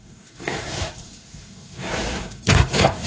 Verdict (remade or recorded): remade